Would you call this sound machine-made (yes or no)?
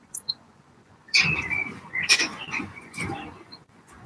yes